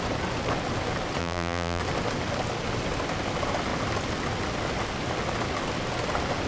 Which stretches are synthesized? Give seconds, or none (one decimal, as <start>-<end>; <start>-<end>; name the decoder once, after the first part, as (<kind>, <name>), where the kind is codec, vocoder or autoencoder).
1.2-1.8 (vocoder, BigVGAN v2)